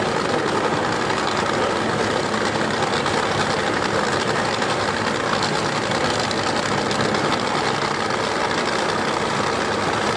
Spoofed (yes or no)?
no